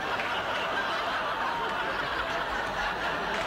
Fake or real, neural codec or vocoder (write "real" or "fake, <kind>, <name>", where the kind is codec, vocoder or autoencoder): real